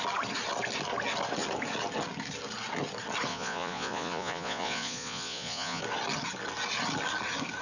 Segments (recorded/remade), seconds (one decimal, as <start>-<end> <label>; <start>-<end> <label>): 0.0-3.3 recorded; 3.3-5.8 remade; 5.8-7.6 recorded